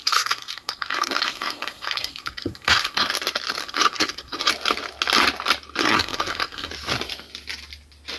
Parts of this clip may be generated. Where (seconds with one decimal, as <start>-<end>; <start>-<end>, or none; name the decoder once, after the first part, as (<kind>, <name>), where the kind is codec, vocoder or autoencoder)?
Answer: 0.0-3.1 (codec, SNAC); 3.6-4.5; 5.8-6.7